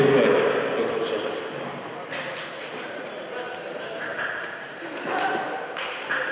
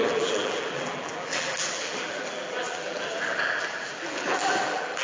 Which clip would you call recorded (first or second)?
first